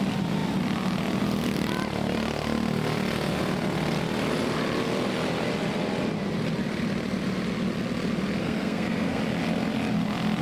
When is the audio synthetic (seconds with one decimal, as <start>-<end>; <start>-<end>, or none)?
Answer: 8.4-9.2